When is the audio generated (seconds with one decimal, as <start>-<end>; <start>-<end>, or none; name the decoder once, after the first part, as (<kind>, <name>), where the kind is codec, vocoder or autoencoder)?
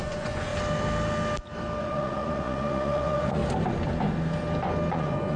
0.0-0.5 (vocoder, Vocos); 1.8-3.4; 4.9-5.4